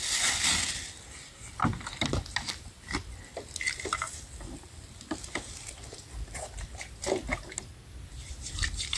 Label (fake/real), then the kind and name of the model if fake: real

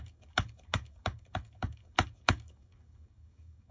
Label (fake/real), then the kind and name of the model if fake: fake, codec, DAC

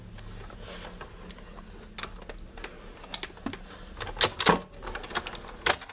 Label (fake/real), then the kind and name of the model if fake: real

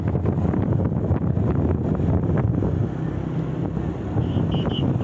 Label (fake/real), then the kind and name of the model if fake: real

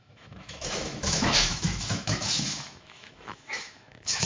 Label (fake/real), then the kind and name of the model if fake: fake, autoencoder, DAC-VAE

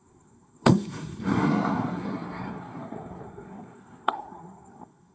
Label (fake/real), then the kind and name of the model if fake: fake, codec, SNAC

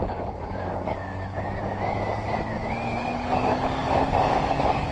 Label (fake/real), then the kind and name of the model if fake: fake, codec, DAC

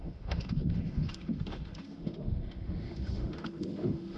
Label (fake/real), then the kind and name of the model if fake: fake, autoencoder, DAC-VAE